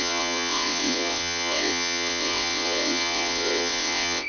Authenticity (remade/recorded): remade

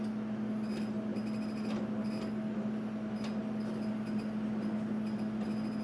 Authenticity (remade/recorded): recorded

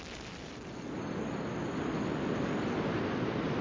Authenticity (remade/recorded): recorded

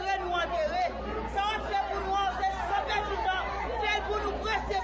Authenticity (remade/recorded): recorded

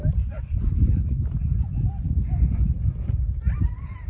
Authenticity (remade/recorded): recorded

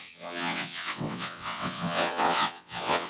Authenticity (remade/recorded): remade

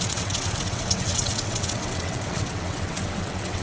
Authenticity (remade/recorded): remade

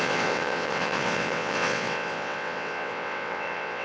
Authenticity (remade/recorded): remade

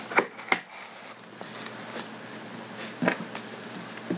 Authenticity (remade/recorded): recorded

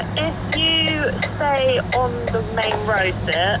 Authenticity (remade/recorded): recorded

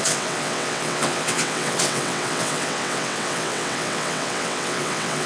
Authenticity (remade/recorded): remade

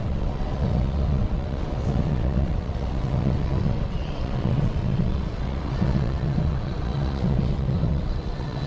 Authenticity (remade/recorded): remade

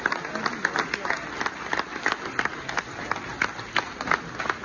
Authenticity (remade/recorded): recorded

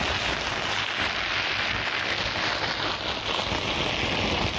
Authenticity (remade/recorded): recorded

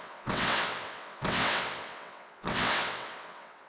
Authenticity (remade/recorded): remade